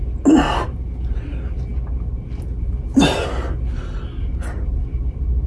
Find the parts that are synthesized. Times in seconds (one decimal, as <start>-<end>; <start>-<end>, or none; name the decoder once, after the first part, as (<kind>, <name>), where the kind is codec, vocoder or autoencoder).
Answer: none